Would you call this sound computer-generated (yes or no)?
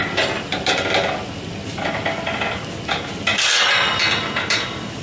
no